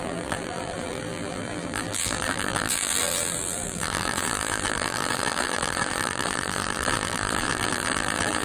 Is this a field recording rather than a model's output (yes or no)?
no